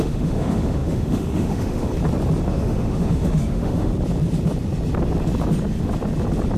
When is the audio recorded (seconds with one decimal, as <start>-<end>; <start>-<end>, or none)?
1.9-2.5; 3.9-6.6